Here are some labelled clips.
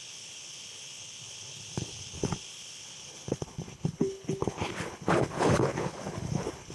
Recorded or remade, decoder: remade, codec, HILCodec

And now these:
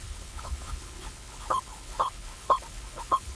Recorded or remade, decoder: remade, codec, HILCodec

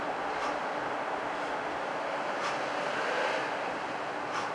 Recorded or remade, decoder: recorded